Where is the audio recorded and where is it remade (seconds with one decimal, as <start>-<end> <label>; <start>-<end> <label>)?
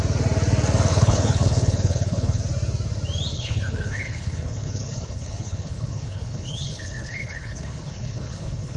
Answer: 0.0-0.9 recorded; 0.9-2.4 remade; 2.4-3.3 recorded; 3.3-8.8 remade